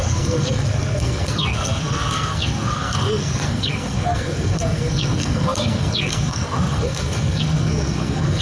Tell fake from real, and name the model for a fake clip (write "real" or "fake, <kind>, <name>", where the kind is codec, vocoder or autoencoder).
fake, codec, SNAC